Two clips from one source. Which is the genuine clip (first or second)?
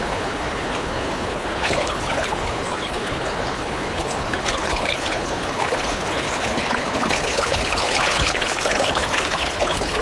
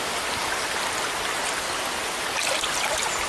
second